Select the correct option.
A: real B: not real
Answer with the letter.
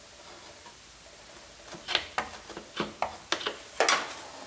A